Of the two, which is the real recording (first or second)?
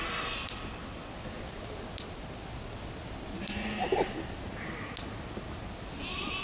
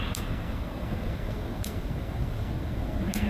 first